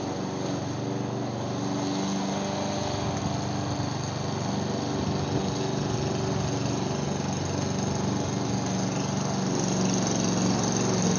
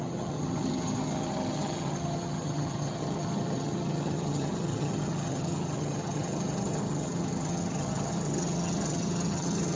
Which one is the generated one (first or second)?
second